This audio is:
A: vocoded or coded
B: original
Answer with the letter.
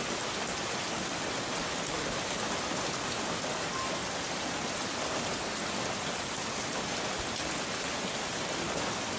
B